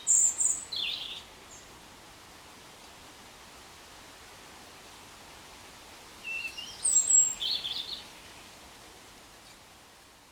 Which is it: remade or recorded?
recorded